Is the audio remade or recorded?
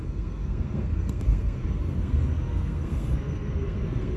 remade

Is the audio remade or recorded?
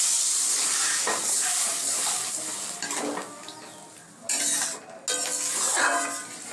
recorded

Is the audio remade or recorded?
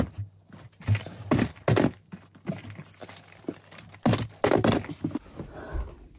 recorded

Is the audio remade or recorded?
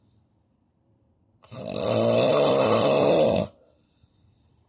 remade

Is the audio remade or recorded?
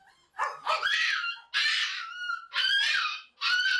recorded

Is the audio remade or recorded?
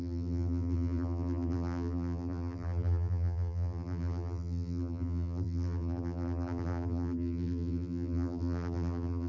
remade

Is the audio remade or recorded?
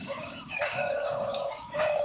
remade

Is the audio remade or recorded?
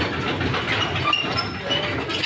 recorded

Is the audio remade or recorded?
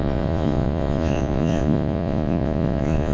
remade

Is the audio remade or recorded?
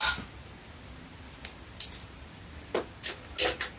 recorded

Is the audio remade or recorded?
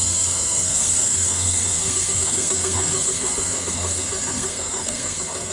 remade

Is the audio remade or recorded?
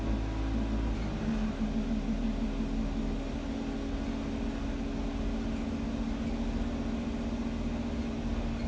recorded